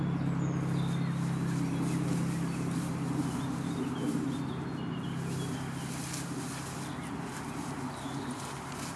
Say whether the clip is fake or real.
real